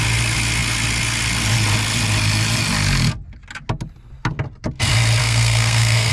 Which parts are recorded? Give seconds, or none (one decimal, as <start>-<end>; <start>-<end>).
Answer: 0.0-5.2